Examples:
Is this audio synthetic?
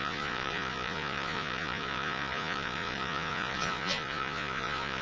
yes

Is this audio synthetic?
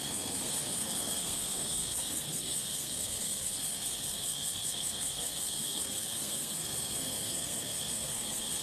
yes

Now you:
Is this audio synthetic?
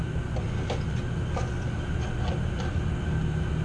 no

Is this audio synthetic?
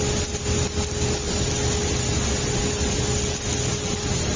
no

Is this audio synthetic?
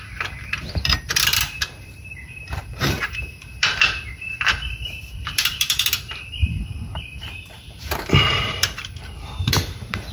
yes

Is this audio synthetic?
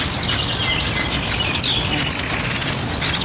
no